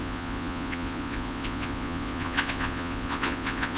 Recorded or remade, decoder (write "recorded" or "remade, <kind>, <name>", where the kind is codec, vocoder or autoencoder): remade, vocoder, Vocos